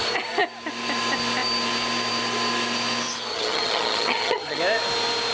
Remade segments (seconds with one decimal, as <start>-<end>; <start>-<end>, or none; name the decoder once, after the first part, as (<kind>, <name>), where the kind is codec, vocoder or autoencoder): 3.3-4.6 (vocoder, HiFi-GAN)